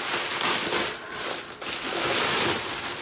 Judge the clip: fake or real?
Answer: fake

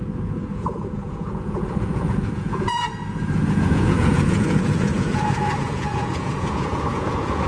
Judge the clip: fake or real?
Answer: fake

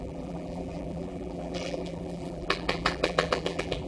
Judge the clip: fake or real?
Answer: fake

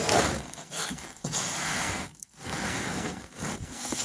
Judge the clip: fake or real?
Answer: fake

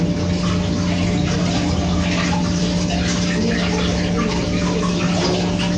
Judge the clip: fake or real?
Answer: real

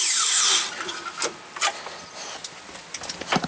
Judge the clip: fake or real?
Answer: real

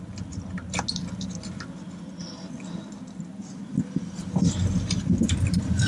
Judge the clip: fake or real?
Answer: real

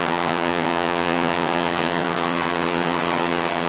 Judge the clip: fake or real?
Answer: fake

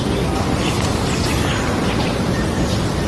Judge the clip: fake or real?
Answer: real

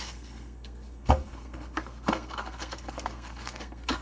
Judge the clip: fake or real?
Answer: fake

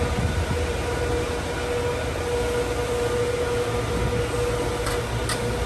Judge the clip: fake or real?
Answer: real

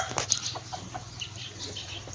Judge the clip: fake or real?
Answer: real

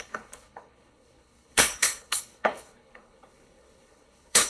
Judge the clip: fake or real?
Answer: fake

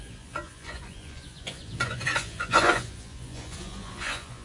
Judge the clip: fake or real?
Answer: fake